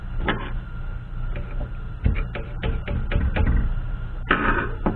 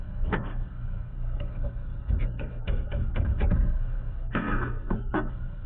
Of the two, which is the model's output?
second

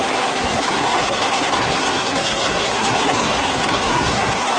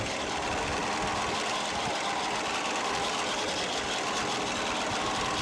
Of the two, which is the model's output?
first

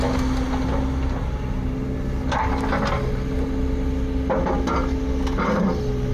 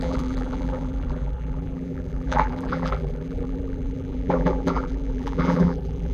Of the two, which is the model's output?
second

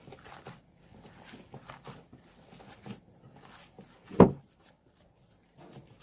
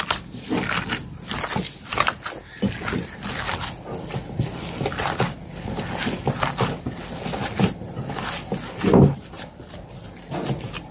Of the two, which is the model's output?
second